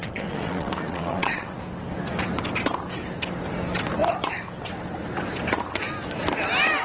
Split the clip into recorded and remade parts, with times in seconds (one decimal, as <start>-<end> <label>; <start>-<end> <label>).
0.0-1.6 remade; 1.6-6.8 recorded